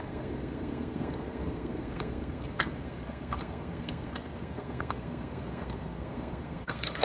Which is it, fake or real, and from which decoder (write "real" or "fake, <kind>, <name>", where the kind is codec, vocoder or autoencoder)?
fake, codec, SNAC